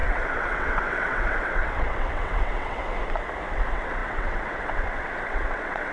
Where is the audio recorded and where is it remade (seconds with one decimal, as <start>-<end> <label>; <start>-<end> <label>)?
0.0-2.8 remade; 2.8-3.5 recorded; 3.5-5.9 remade